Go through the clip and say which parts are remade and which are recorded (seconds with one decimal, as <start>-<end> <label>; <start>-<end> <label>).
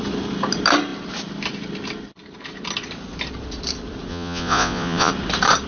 0.0-4.1 recorded; 4.1-5.1 remade; 5.1-5.7 recorded